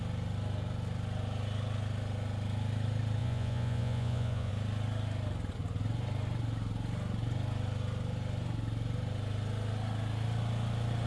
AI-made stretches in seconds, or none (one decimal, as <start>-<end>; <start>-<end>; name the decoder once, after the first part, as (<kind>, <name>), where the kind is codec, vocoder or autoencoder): 3.2-4.5 (vocoder, Vocos)